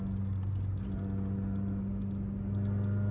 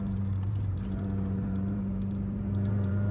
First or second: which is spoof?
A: second